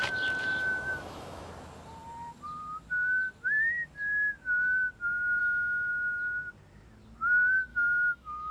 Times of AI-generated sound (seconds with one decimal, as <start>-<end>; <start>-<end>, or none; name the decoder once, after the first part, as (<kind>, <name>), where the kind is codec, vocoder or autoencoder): 0.4-1.5 (autoencoder, DAC-VAE); 5.4-5.9; 7.7-8.5

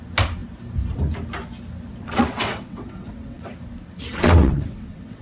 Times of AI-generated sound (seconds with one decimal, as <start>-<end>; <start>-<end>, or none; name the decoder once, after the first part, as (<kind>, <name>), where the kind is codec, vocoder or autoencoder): 1.9-3.5 (vocoder, WaveNeXt); 4.1-5.2

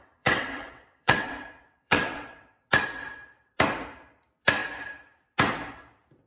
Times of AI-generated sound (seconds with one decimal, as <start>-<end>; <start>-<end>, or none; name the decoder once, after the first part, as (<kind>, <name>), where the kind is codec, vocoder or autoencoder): 0.0-2.6 (vocoder, WaveNeXt)

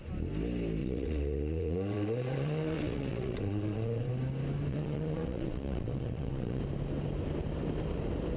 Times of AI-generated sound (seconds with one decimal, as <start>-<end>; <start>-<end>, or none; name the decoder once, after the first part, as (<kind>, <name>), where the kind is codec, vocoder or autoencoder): 0.8-4.1 (vocoder, WaveNeXt); 4.7-6.6

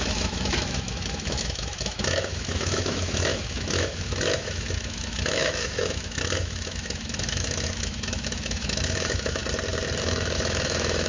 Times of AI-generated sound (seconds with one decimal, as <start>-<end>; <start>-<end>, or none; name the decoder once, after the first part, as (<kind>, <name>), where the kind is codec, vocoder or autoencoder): 0.0-9.4 (autoencoder, DAC-VAE); 10.0-11.1

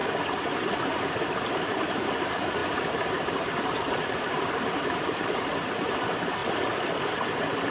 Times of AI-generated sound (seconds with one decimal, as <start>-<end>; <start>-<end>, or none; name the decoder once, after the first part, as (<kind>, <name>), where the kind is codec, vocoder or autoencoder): 0.8-6.4 (vocoder, BigVGAN v2)